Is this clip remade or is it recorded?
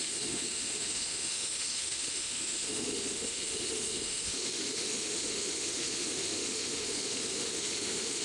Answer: remade